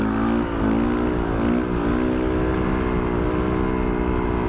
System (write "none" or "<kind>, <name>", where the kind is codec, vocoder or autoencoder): none